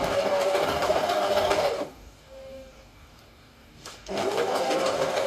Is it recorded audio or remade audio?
remade